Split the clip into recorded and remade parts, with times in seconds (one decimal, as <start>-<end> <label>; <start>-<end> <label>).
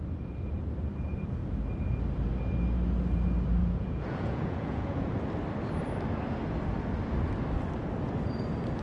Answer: 0.0-3.6 recorded; 3.6-5.2 remade; 5.2-8.8 recorded